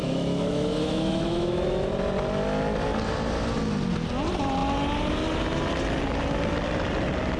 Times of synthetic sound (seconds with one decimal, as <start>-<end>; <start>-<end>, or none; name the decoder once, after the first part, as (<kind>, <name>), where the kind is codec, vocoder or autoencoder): 0.0-1.9 (autoencoder, DAC-VAE)